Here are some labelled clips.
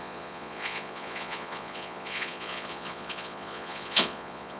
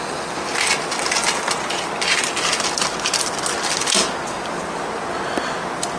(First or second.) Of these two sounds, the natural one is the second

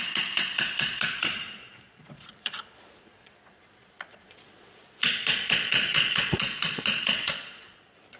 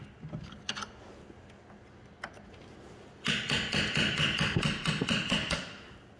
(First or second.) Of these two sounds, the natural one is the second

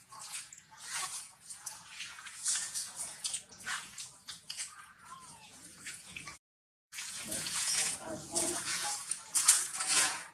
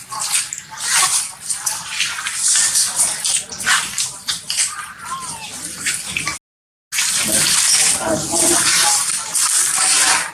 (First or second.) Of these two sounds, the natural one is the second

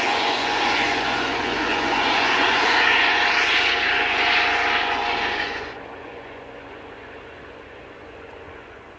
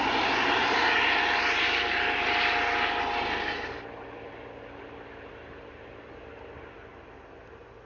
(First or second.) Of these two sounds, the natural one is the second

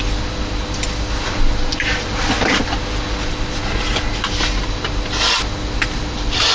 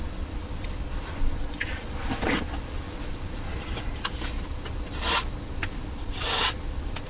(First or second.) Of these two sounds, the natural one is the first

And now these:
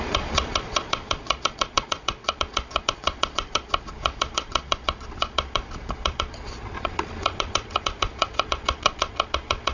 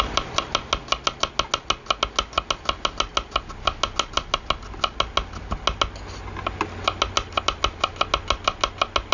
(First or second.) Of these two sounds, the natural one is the second